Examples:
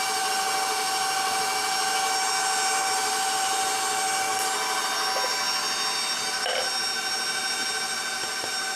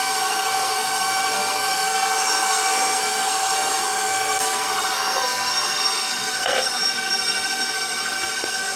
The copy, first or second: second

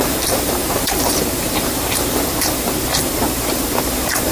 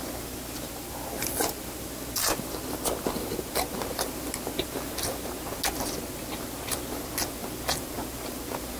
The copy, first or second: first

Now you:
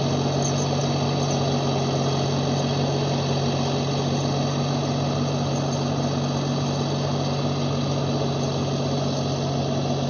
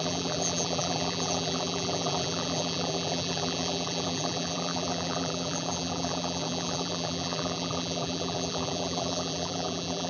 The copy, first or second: second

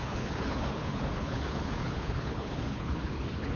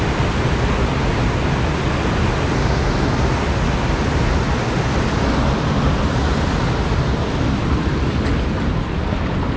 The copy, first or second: first